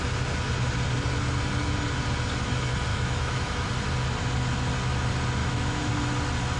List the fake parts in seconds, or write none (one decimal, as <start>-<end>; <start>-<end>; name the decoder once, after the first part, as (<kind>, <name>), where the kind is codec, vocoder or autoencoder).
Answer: 2.9-3.7 (autoencoder, DAC-VAE); 5.4-5.9